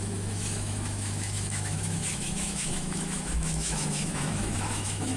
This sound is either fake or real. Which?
fake